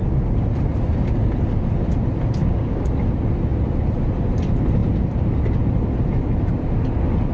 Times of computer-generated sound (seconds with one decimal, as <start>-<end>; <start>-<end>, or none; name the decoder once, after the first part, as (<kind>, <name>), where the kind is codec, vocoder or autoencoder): 2.4-2.9 (codec, DAC)